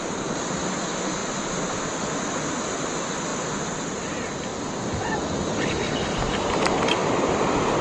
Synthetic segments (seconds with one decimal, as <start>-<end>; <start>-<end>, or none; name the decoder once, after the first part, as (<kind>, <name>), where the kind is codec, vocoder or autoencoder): 1.2-2.2 (vocoder, BigVGAN v2); 3.3-4.1; 7.0-7.8